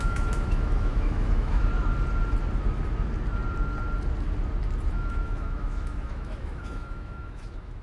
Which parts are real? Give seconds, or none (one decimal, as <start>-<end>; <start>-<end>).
1.7-4.9